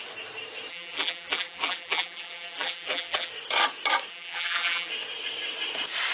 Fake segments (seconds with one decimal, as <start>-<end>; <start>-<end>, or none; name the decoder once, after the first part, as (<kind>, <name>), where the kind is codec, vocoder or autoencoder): 0.7-3.3 (vocoder, BigVGAN v2); 4.1-4.9